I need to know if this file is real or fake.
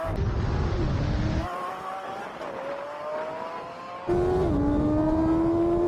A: real